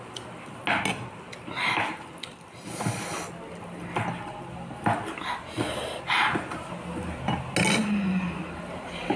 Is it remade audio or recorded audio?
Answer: recorded